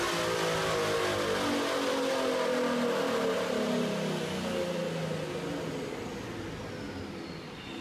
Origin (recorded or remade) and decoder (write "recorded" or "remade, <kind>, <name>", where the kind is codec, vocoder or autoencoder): recorded